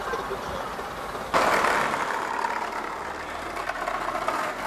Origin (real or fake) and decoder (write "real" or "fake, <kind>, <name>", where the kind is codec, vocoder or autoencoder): real